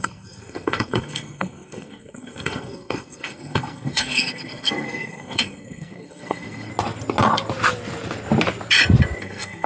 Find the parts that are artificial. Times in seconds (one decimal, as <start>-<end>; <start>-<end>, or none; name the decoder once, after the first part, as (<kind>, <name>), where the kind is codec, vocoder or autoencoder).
0.0-6.7 (codec, SNAC); 9.2-9.7